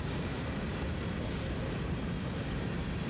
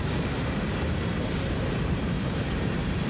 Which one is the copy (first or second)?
second